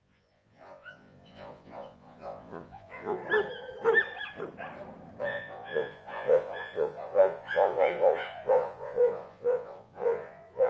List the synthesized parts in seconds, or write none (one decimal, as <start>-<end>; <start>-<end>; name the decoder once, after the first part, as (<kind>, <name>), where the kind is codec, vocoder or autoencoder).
0.0-3.2 (vocoder, Vocos); 5.2-10.7